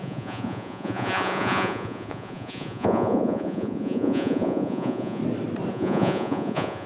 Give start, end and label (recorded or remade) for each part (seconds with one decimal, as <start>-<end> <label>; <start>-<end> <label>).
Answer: 0.0-5.2 remade; 5.2-5.7 recorded; 5.7-6.9 remade